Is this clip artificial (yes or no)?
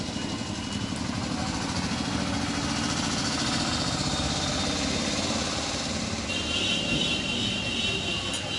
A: no